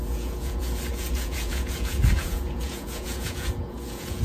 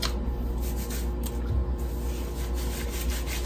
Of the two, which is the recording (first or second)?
second